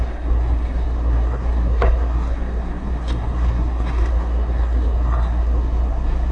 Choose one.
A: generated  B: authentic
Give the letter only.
A